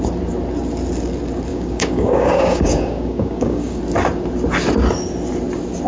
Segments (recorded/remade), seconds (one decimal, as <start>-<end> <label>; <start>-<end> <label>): 0.0-1.5 recorded; 1.5-3.8 remade; 3.8-5.9 recorded